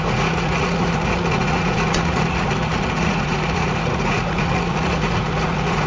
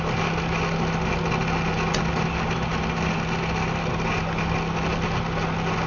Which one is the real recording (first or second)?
second